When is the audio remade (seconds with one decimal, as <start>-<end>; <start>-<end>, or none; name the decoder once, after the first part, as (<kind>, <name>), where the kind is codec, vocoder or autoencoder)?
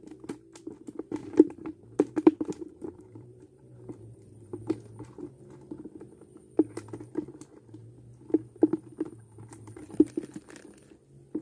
1.2-4.6 (vocoder, BigVGAN v2)